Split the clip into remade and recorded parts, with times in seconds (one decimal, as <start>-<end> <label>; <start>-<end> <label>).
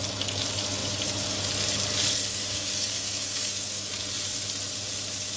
0.0-2.3 recorded; 2.3-3.9 remade; 3.9-5.4 recorded